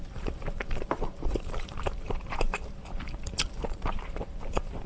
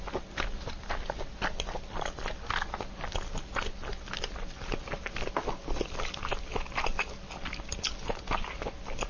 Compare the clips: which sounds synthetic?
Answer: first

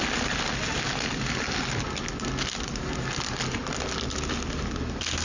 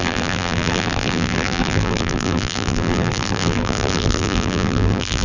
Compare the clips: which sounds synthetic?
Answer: second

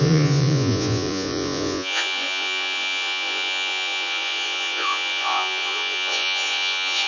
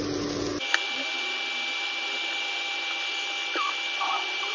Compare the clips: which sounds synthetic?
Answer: first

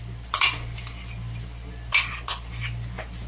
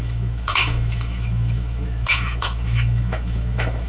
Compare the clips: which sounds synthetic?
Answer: second